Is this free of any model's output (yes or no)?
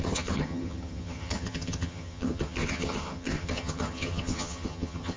no